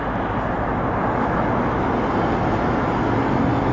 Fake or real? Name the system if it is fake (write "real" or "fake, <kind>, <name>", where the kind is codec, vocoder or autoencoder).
real